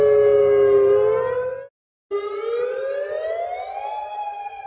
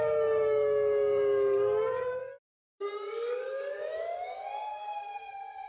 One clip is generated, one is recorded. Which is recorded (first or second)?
first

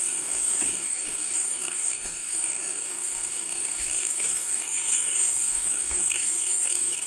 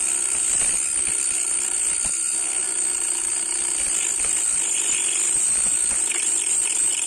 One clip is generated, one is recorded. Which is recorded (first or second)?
second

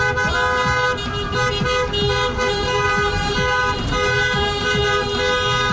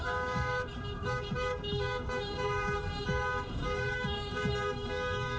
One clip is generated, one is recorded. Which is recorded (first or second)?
first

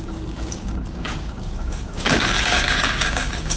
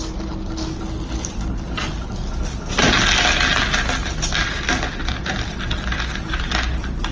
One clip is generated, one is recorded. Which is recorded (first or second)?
second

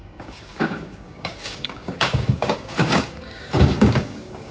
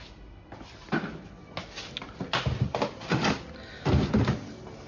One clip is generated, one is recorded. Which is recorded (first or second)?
second